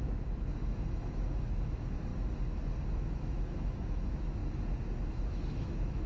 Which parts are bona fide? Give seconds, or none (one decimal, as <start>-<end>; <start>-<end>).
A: 2.1-2.9; 4.4-5.1